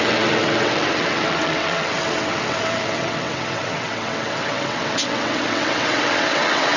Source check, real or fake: fake